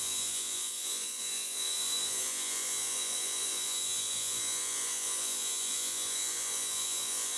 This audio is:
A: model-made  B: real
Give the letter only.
A